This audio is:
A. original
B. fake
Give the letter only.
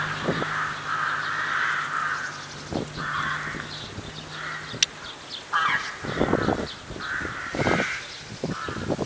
A